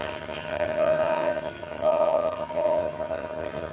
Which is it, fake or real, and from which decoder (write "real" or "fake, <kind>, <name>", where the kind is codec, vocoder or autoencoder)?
fake, vocoder, HiFi-GAN